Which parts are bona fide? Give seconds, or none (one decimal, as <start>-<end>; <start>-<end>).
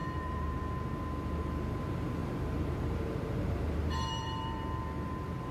0.6-2.2; 4.6-5.5